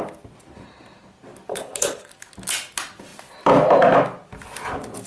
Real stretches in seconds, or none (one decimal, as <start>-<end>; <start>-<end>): 0.0-1.5; 2.1-5.1